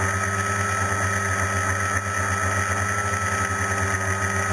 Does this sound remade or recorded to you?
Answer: recorded